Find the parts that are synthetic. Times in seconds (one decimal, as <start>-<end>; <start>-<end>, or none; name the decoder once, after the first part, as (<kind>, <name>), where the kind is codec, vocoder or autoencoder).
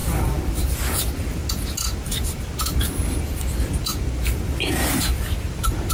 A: 0.6-1.4 (vocoder, BigVGAN v2); 3.0-3.9; 4.7-5.9